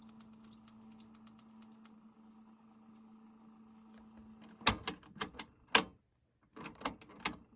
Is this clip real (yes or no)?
yes